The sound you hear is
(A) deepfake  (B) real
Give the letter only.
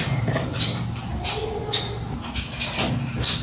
B